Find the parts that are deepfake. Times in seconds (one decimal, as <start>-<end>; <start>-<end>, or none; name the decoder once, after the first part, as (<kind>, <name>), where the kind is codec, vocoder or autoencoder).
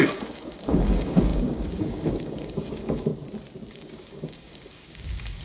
0.0-3.1 (codec, DAC); 3.7-5.4